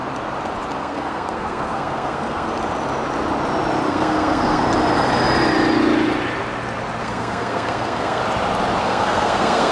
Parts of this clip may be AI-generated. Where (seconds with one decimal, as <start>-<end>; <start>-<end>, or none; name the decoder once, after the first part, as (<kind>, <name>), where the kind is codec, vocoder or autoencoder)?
0.8-2.5 (codec, SNAC); 3.9-4.6; 7.0-8.2; 8.8-9.7